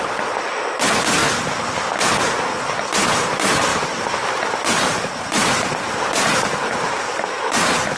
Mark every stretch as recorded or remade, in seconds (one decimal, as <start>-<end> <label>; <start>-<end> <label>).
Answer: 0.0-3.7 recorded; 3.7-8.0 remade